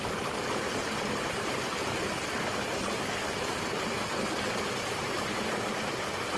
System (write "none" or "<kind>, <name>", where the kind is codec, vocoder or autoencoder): none